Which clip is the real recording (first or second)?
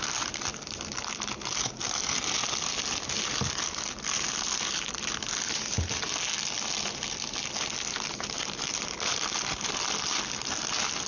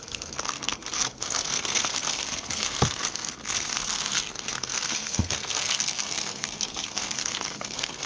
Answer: first